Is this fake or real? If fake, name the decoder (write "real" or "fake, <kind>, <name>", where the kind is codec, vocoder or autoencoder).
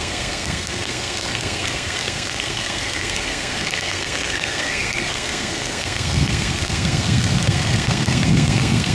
fake, codec, SNAC